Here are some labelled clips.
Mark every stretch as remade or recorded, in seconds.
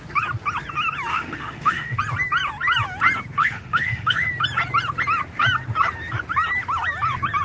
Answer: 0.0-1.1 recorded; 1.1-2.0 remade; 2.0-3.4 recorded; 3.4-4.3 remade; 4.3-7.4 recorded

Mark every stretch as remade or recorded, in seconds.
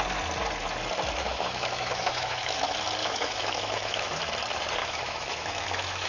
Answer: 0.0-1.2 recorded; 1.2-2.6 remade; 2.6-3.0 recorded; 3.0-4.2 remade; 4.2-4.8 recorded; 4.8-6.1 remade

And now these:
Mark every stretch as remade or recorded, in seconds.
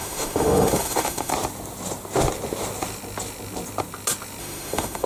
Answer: 0.0-1.3 remade; 1.3-4.4 recorded; 4.4-5.1 remade